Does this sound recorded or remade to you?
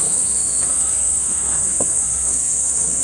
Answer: remade